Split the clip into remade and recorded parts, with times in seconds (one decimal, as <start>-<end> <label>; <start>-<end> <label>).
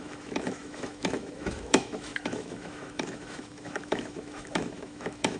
0.0-5.4 remade